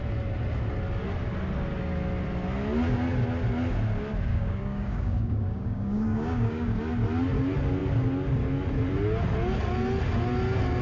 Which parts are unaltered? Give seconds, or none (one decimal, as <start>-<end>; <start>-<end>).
0.0-4.3; 6.8-10.8